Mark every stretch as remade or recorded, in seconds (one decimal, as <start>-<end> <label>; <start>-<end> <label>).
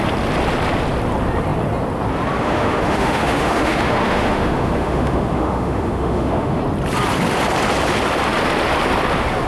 0.0-2.4 recorded; 2.4-6.6 remade; 6.6-9.5 recorded